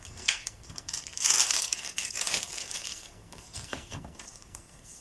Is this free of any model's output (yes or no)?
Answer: no